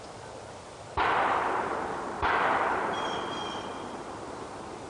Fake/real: real